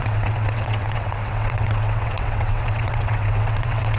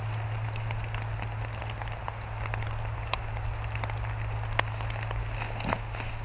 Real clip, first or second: second